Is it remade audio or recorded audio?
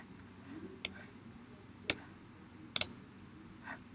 recorded